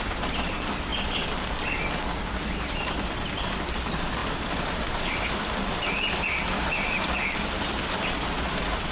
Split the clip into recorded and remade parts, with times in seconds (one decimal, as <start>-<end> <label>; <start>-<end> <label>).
0.0-0.9 remade; 0.9-2.4 recorded; 2.4-8.9 remade